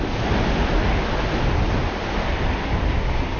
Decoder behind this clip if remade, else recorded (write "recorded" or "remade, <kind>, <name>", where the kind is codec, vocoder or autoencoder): recorded